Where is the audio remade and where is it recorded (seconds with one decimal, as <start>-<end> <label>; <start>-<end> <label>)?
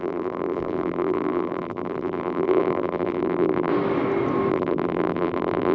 0.0-3.7 remade; 3.7-4.5 recorded; 4.5-5.7 remade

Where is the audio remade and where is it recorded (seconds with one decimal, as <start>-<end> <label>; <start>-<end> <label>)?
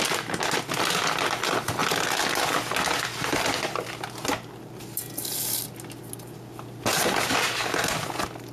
0.0-8.5 recorded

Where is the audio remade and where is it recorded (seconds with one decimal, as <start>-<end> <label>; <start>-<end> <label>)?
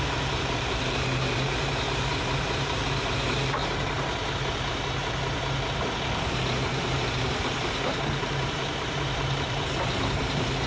0.0-3.6 remade; 3.6-6.7 recorded; 6.7-10.7 remade